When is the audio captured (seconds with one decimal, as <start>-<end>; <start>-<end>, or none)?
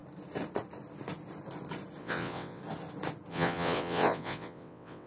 0.0-2.0; 2.6-3.3